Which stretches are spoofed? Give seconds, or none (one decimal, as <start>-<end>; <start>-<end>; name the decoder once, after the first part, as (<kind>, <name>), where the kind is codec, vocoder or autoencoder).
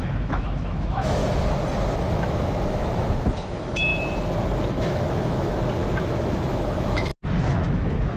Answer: 0.0-1.2 (autoencoder, DAC-VAE); 2.0-3.9; 4.7-5.5; 6.0-7.1; 7.7-8.2